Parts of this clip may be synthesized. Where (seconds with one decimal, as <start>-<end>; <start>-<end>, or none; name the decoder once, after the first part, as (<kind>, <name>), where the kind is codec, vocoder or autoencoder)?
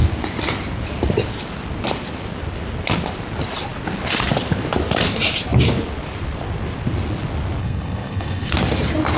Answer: 7.6-8.5 (codec, SNAC)